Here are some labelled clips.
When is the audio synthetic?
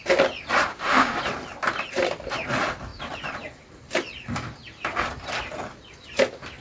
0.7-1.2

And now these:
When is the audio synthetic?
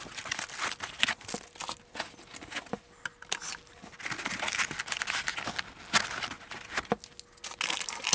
none